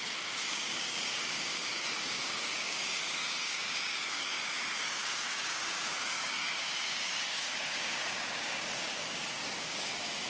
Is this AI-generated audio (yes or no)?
yes